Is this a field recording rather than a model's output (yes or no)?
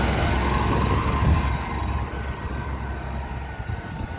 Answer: yes